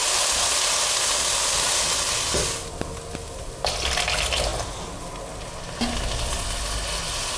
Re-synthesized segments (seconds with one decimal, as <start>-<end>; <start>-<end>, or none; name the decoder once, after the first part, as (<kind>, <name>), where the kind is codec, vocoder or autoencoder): none